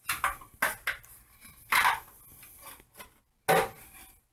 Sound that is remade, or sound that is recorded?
recorded